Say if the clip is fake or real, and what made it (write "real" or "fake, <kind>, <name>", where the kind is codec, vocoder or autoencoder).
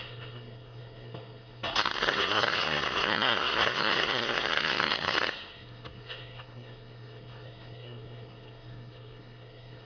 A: fake, codec, SNAC